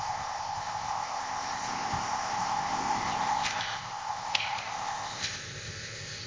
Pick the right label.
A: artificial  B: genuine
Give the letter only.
A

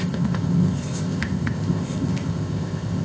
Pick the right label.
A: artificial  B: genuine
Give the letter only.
A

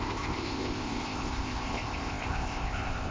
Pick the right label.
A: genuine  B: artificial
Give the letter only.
B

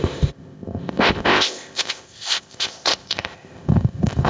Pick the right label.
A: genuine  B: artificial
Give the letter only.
B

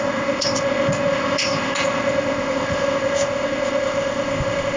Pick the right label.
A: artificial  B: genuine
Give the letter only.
A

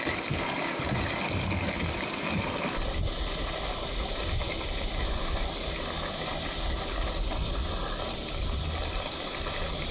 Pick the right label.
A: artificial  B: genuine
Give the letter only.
B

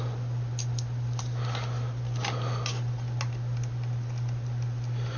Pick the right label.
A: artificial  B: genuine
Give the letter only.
B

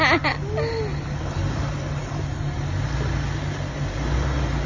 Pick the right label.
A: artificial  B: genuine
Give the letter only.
B